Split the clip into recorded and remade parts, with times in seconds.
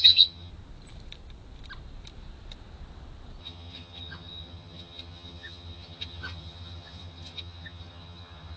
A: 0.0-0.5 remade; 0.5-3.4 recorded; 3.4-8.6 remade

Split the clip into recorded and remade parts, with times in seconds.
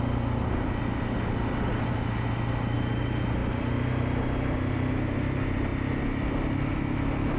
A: 0.0-7.4 recorded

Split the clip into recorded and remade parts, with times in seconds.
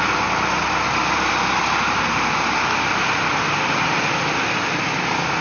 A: 0.0-5.4 recorded